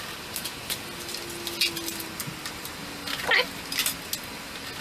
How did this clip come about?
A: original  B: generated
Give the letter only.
A